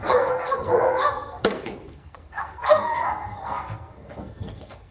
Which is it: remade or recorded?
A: remade